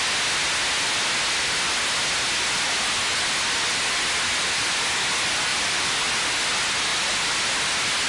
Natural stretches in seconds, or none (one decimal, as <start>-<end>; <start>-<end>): 0.0-5.5; 6.0-8.1